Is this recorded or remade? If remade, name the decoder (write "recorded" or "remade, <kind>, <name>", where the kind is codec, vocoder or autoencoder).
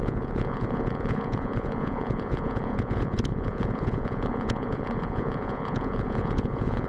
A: remade, vocoder, Vocos